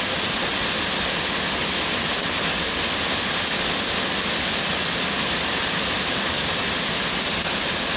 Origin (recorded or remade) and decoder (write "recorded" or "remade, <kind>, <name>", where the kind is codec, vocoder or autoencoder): recorded